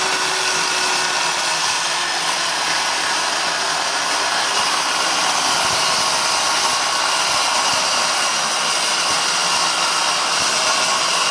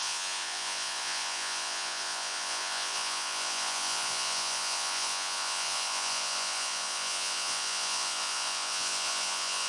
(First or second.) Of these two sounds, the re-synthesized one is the second